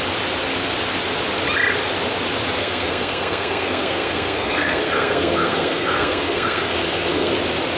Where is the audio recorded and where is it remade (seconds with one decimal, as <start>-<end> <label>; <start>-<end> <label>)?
0.0-2.6 recorded; 2.6-7.3 remade; 7.3-7.8 recorded